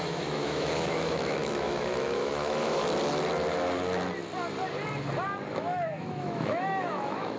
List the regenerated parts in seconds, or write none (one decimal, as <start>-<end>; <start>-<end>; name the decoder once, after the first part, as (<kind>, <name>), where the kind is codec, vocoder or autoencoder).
0.0-2.8 (autoencoder, DAC-VAE); 5.5-7.4